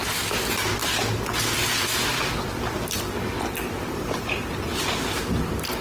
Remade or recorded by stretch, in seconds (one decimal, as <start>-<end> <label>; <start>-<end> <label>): 0.0-5.8 recorded